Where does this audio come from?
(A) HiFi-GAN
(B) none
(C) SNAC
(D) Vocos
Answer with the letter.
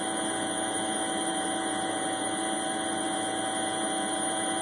B